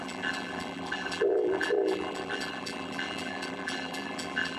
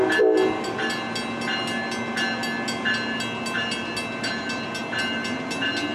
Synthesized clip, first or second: first